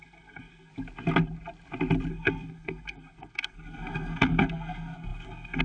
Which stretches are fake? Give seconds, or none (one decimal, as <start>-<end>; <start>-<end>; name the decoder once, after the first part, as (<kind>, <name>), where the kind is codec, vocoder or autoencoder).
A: 0.0-0.7 (codec, SNAC); 2.1-5.6